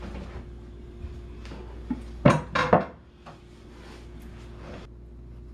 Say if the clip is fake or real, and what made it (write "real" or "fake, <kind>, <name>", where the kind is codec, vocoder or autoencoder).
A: real